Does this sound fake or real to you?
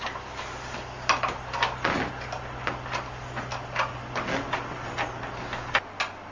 real